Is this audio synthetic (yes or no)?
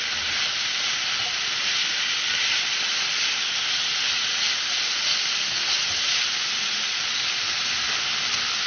no